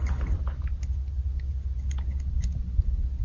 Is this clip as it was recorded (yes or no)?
yes